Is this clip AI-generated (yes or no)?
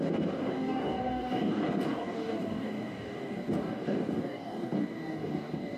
yes